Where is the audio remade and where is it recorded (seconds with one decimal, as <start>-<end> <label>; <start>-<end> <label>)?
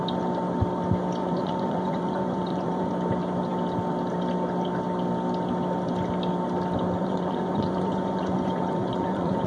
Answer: 0.0-1.2 recorded; 1.2-2.9 remade; 2.9-7.0 recorded; 7.0-9.5 remade